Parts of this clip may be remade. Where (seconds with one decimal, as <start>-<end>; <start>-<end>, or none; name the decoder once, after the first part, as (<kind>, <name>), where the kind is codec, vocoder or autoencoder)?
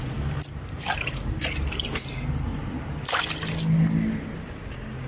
2.5-3.2 (vocoder, BigVGAN v2)